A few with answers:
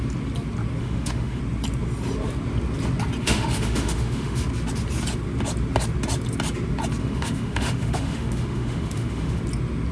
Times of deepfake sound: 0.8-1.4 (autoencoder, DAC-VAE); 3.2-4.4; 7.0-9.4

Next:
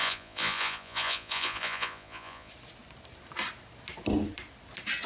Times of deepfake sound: 0.0-2.5 (vocoder, Vocos)

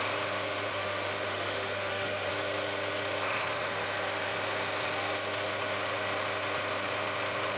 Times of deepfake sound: 0.7-2.3 (autoencoder, DAC-VAE)

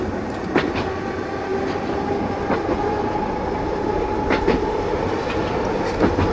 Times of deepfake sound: none

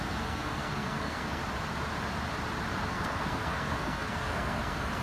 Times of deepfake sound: 0.0-1.4 (codec, SNAC); 2.9-5.0

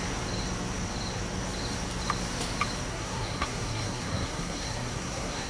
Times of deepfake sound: 2.9-5.5 (codec, SNAC)

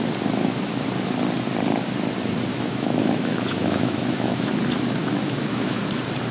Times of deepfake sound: 2.5-4.5 (autoencoder, DAC-VAE); 5.0-5.8